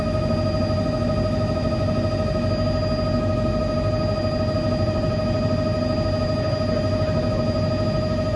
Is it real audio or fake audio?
real